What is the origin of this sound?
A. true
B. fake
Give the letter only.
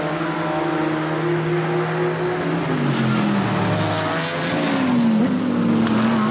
A